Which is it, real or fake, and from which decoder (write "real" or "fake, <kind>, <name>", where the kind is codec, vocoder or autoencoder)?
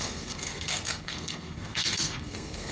fake, codec, SNAC